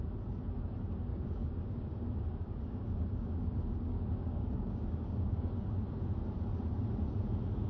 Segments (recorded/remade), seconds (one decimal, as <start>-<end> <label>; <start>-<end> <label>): 0.0-1.1 recorded; 1.1-5.7 remade; 5.7-7.7 recorded